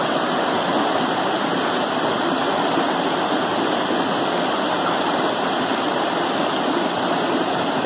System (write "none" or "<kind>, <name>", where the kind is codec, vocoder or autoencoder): none